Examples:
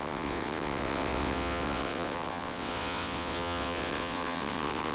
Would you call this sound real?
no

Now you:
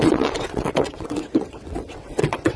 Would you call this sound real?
no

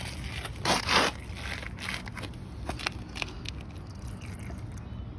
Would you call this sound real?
yes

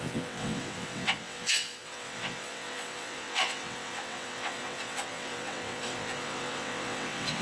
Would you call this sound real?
no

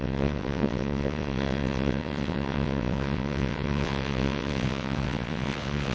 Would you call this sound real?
no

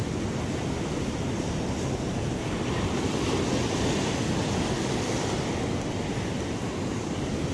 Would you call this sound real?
yes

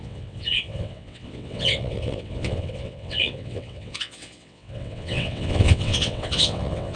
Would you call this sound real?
no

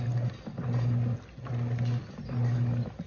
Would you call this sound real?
yes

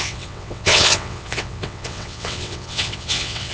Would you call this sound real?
no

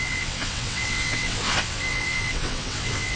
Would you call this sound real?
no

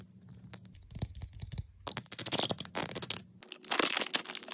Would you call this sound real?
yes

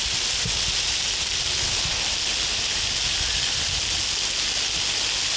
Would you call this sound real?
yes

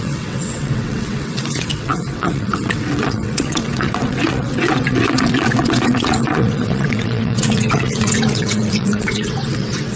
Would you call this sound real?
no